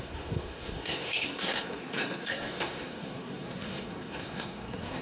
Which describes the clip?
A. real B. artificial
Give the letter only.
B